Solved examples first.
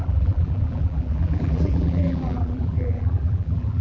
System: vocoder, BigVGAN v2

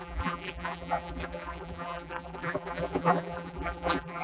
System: vocoder, BigVGAN v2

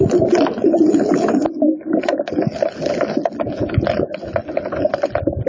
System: vocoder, BigVGAN v2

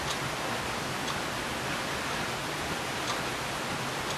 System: none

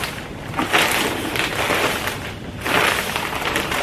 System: none